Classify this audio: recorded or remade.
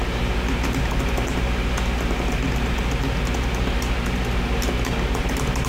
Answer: recorded